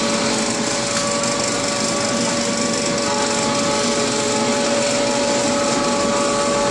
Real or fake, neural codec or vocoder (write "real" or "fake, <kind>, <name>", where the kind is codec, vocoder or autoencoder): real